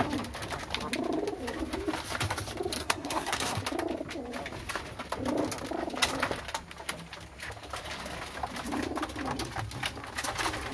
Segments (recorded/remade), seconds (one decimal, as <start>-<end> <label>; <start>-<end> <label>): 0.0-2.8 recorded; 2.8-3.6 remade; 3.6-10.7 recorded